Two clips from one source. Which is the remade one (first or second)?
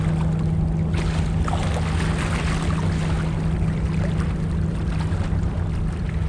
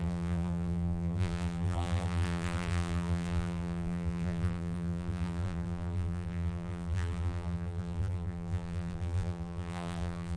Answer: second